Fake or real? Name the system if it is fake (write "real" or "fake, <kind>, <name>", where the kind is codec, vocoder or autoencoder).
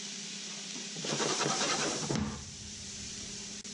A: fake, vocoder, BigVGAN v2